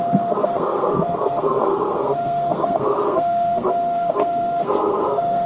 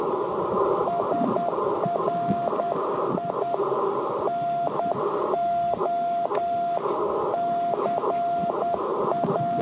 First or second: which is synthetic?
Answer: first